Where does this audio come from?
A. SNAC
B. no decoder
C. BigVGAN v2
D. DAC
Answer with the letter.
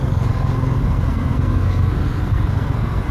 A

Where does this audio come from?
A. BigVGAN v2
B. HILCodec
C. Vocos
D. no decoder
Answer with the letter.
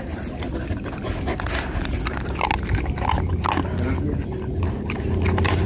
D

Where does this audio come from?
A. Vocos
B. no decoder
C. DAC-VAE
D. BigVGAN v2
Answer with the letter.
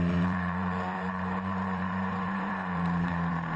D